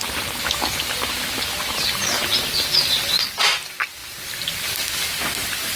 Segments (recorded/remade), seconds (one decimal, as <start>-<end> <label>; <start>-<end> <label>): 0.0-5.8 recorded